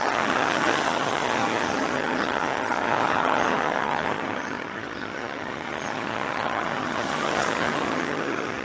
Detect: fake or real fake